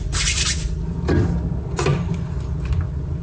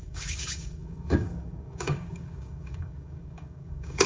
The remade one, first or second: second